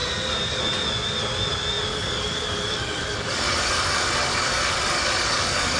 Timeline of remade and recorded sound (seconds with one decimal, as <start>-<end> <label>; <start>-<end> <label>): 0.0-1.9 recorded; 1.9-5.8 remade